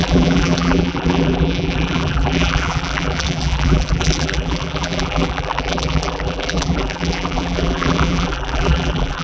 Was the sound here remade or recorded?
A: remade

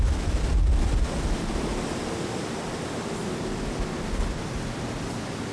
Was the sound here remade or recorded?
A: recorded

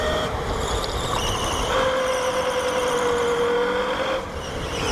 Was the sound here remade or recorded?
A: recorded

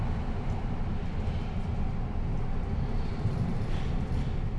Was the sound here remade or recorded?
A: recorded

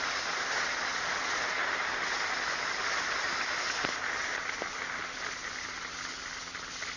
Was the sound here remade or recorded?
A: recorded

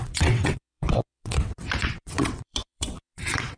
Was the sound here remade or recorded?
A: remade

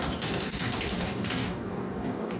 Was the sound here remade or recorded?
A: remade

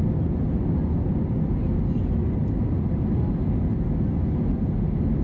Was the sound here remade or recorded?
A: recorded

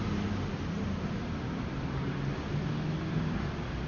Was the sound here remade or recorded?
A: recorded